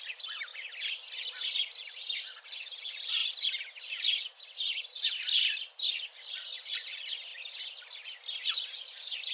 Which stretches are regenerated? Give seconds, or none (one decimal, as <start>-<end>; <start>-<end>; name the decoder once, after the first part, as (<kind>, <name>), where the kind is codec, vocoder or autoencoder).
0.0-0.5 (vocoder, BigVGAN v2); 2.4-3.2; 5.8-9.3